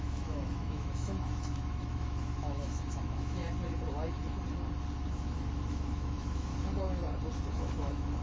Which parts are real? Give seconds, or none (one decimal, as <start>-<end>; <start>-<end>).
3.4-5.7; 6.5-7.5